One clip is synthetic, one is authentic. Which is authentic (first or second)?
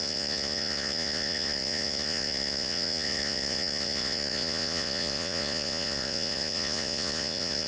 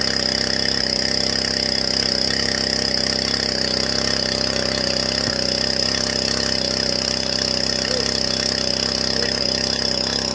second